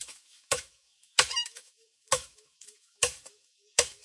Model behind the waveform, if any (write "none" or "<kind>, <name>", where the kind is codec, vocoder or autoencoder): autoencoder, DAC-VAE